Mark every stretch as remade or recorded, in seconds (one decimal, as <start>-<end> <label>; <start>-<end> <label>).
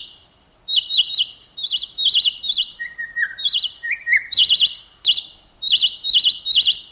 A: 0.0-6.9 recorded